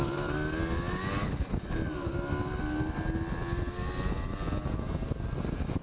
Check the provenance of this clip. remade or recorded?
recorded